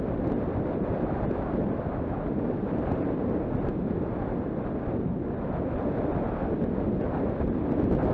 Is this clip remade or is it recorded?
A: recorded